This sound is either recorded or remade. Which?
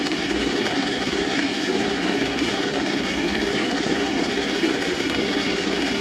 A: remade